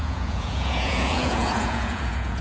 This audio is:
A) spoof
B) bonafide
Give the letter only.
A